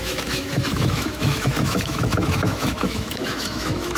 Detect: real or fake fake